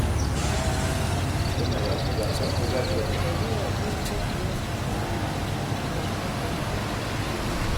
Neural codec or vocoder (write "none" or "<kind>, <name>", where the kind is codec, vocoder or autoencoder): none